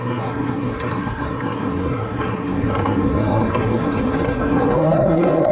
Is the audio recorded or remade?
remade